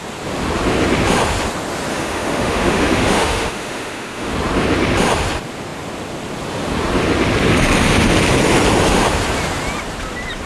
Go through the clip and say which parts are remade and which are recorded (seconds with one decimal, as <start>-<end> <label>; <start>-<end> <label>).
0.0-1.9 recorded; 1.9-4.3 remade; 4.3-10.5 recorded